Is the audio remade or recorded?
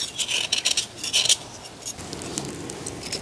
recorded